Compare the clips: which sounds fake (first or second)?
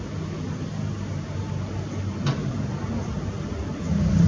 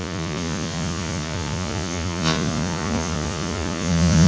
second